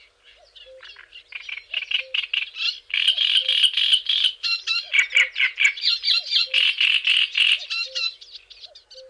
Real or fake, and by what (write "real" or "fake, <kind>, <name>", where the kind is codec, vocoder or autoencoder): real